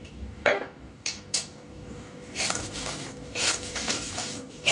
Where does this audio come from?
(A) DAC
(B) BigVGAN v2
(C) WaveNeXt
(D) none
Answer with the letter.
A